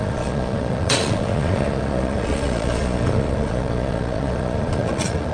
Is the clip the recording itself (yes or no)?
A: no